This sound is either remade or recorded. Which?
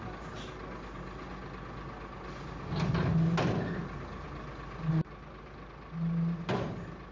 recorded